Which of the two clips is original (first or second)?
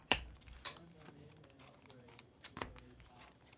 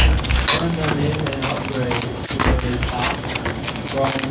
second